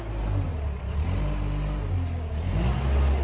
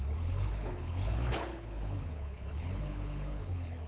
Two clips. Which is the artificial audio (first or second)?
second